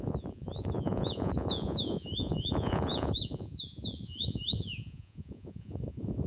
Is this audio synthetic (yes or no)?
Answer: yes